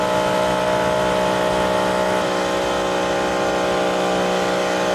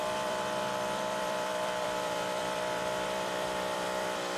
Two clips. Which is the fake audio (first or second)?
second